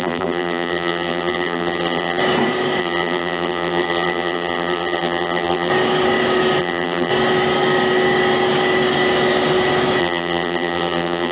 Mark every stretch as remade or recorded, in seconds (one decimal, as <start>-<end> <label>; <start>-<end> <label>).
0.0-2.2 remade; 2.2-2.8 recorded; 2.8-5.7 remade; 5.7-6.6 recorded; 6.6-7.1 remade; 7.1-10.0 recorded; 10.0-11.3 remade